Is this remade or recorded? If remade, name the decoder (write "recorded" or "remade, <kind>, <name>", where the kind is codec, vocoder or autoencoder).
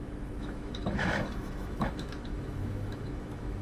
remade, autoencoder, DAC-VAE